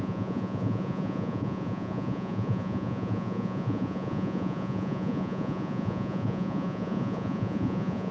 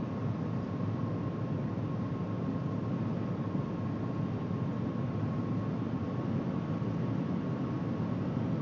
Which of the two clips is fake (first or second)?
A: first